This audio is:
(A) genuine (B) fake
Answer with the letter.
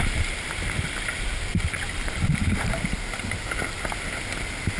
A